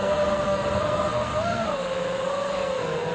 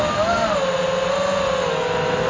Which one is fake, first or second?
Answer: first